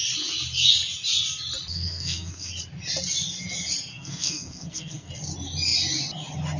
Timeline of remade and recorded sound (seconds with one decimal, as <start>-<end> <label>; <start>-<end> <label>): 0.0-1.7 recorded; 1.7-2.5 remade; 2.5-3.9 recorded; 3.9-5.1 remade; 5.1-6.6 recorded